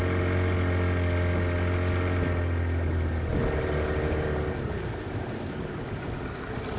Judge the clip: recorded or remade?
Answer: recorded